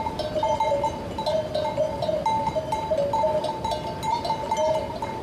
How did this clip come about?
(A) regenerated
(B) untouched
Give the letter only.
B